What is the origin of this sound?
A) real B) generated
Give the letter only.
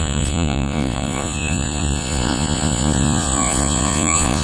B